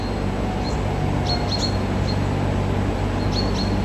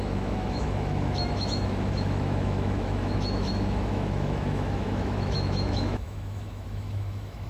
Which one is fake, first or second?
second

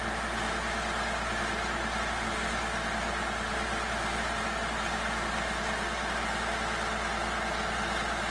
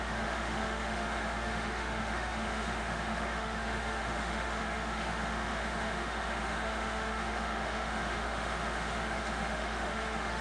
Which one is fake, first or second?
second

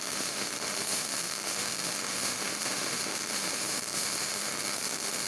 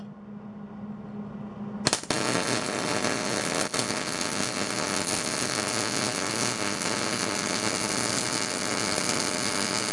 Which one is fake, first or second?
first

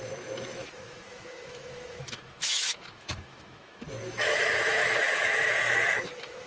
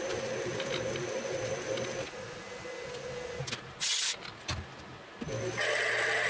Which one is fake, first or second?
first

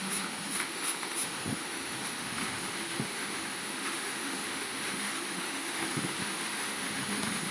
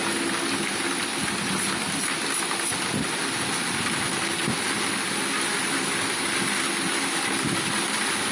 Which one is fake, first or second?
first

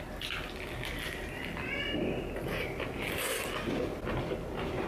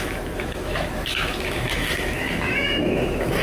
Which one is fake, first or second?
second